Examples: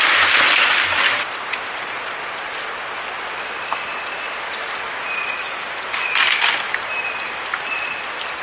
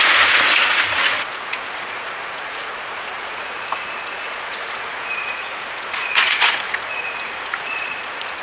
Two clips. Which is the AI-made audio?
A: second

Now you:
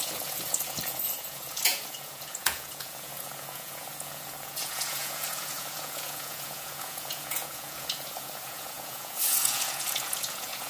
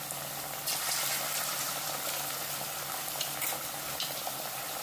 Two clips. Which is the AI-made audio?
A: first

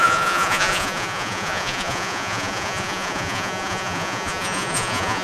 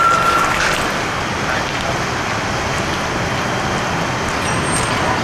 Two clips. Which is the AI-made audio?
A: first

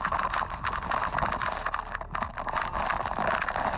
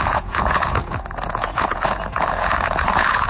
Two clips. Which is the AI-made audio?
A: second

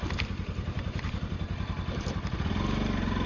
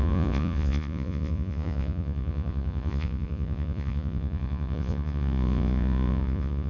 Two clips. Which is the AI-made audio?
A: second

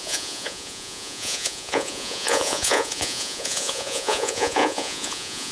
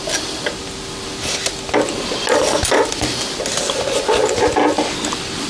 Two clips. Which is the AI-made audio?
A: first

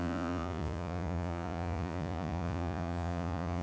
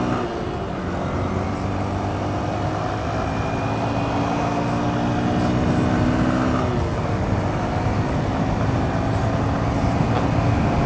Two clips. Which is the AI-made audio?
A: first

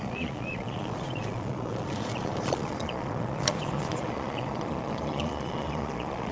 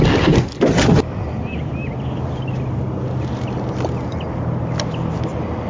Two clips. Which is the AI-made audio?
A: first